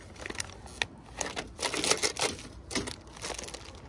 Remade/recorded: recorded